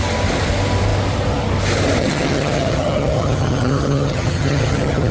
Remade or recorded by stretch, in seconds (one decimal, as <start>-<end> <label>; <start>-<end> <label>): 0.0-2.0 recorded; 2.0-5.1 remade